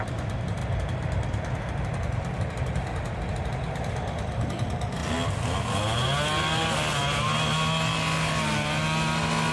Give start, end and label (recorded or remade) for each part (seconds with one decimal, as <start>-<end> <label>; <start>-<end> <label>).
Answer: 0.0-5.0 remade; 5.0-9.5 recorded